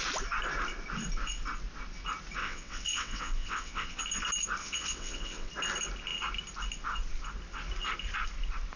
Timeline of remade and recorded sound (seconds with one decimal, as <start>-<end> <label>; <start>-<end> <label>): 0.0-2.4 recorded; 2.4-4.0 remade; 4.0-4.6 recorded; 4.6-5.5 remade; 5.5-8.8 recorded